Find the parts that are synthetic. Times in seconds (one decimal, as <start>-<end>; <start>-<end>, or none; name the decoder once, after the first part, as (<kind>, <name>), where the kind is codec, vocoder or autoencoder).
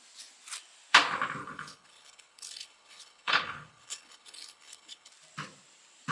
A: 1.4-5.1 (codec, HILCodec)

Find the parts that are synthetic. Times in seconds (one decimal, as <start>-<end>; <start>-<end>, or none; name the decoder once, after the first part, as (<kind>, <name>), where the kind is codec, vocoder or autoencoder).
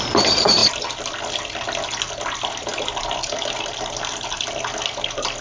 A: none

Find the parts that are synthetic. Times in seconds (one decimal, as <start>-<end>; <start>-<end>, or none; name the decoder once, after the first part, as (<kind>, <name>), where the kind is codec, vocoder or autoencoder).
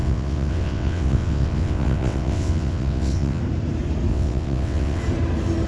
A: 0.0-3.4 (vocoder, WaveNeXt); 4.1-5.0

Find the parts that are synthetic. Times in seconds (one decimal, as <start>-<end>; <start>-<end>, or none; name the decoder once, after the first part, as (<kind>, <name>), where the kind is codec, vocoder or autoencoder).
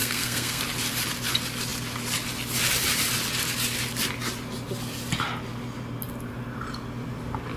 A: 0.0-0.6 (codec, SNAC)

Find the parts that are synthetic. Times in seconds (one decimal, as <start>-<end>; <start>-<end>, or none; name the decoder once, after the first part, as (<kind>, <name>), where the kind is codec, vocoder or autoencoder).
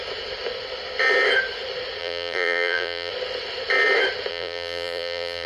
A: 2.0-3.1 (vocoder, BigVGAN v2); 4.3-5.5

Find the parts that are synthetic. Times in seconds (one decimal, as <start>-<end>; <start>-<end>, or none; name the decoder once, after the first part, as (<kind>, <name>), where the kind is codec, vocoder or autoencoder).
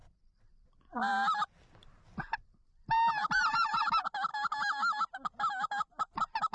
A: 0.0-3.8 (vocoder, BigVGAN v2)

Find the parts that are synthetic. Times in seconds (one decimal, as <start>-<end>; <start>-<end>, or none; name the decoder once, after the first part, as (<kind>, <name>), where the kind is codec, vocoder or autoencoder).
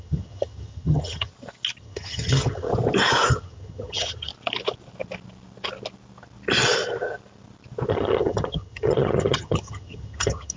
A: 0.0-1.3 (vocoder, HiFi-GAN); 1.8-2.7; 3.3-4.3; 7.9-10.6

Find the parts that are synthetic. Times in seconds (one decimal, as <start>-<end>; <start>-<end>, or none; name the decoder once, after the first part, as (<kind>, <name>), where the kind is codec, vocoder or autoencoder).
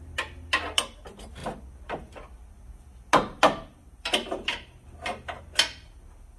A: none